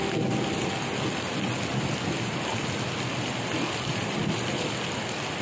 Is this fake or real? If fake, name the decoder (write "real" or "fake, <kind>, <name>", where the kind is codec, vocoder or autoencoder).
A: real